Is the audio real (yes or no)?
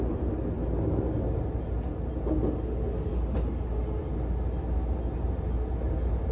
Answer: yes